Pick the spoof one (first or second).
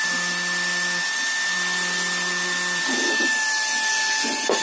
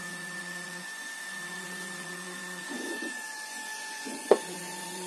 second